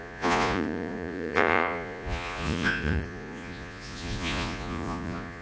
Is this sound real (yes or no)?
no